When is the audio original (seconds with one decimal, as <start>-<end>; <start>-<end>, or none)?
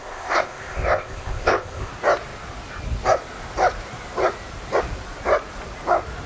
1.9-6.3